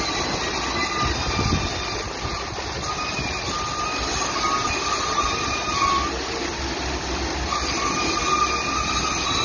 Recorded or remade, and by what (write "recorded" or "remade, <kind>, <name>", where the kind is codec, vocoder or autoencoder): recorded